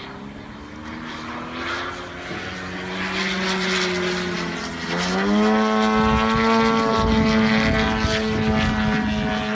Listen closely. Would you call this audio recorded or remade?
recorded